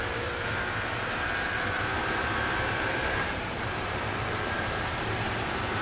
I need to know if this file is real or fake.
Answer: fake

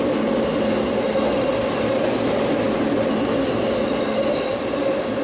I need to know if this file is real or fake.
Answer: real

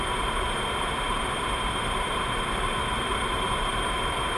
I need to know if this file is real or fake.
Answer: fake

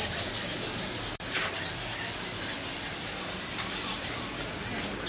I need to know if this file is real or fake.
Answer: real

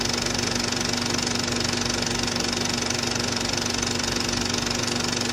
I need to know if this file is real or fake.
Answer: real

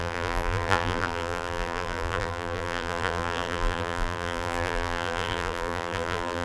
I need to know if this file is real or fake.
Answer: fake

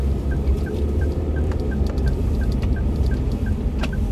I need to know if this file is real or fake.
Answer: fake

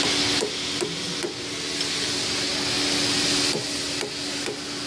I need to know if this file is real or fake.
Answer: real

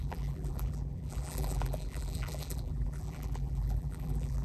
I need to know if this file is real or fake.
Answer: fake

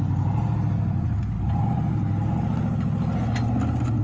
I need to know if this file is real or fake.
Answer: real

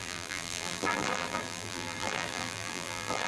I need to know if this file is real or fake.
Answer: fake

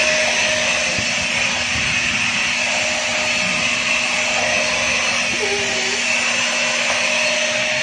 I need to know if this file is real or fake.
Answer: real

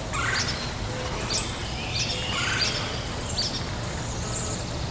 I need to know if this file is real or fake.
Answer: real